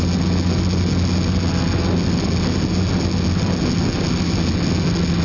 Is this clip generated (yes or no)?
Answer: no